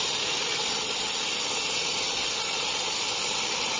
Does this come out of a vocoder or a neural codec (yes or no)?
no